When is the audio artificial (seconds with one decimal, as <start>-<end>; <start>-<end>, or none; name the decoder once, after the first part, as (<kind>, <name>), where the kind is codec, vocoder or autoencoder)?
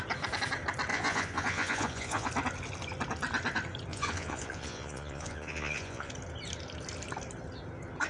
0.9-2.3 (vocoder, Vocos); 3.9-6.1